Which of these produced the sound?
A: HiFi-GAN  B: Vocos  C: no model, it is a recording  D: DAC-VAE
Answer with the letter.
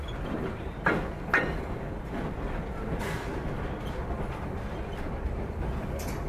C